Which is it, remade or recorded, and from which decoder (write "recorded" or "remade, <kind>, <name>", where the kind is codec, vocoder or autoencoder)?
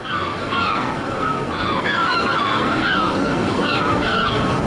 remade, codec, SNAC